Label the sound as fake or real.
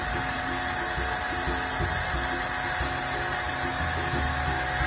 real